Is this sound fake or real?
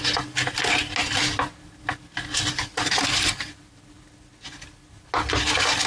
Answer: real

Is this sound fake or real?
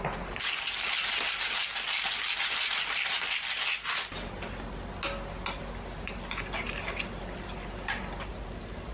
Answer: real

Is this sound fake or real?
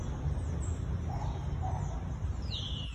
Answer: real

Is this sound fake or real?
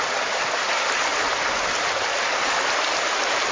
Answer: real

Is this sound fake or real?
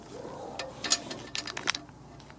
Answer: real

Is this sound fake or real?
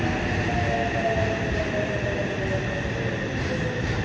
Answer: real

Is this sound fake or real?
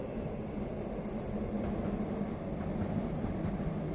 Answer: real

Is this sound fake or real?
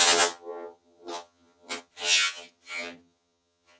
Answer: fake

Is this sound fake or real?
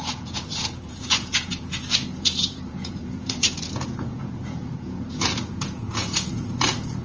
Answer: fake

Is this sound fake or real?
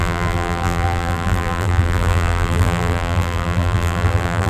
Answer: fake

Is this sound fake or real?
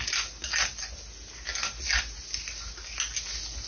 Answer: real